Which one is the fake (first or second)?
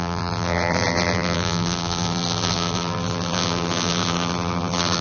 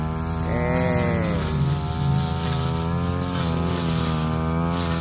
first